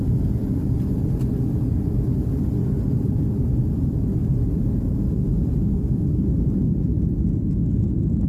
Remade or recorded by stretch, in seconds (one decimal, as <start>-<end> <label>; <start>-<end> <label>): 0.0-8.3 recorded